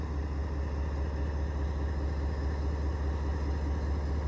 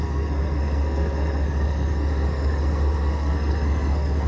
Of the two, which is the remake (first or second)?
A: second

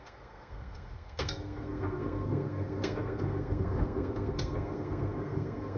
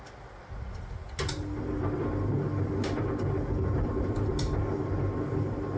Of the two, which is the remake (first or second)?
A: first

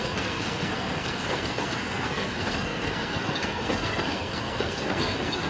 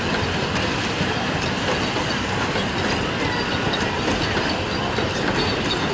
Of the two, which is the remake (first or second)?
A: first